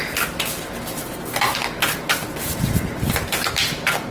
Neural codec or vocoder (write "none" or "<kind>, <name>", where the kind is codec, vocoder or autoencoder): none